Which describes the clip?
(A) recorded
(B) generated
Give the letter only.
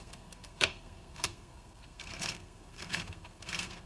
B